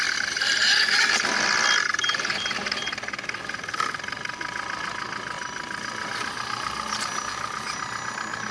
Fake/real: real